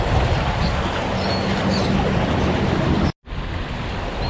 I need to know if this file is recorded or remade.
recorded